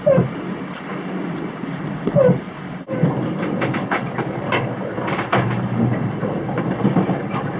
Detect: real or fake fake